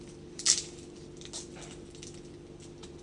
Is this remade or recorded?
recorded